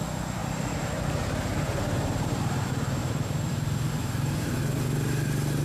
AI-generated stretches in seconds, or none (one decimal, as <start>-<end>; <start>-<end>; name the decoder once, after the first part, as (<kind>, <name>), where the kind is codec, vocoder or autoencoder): 0.4-2.4 (vocoder, BigVGAN v2); 3.0-4.5